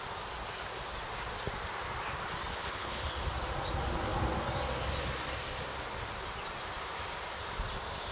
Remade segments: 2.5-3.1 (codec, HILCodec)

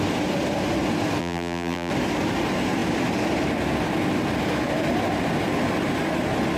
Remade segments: 1.2-1.9 (vocoder, BigVGAN v2)

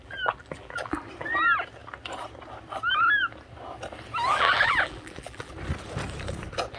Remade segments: 0.0-1.1 (vocoder, BigVGAN v2); 4.3-5.5

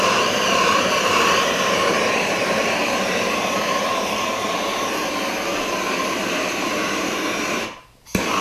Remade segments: 0.0-5.0 (vocoder, BigVGAN v2); 6.1-8.4